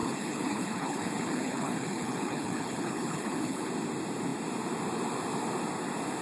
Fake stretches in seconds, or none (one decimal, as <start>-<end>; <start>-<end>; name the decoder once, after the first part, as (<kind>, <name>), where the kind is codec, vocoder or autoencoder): 0.0-3.7 (codec, HILCodec)